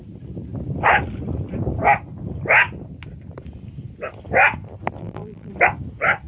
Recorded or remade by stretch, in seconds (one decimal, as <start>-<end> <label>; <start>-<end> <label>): 0.0-5.0 recorded; 5.0-5.5 remade; 5.5-6.3 recorded